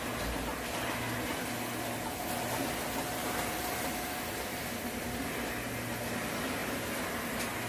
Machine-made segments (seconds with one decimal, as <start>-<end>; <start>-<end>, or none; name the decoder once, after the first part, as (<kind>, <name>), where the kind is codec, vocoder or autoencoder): none